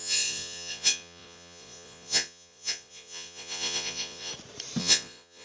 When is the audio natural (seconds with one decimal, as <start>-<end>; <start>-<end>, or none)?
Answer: 4.3-4.8